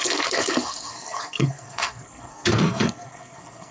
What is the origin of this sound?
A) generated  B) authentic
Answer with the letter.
A